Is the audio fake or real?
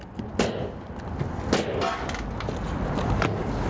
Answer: real